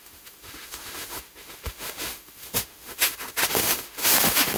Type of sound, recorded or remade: remade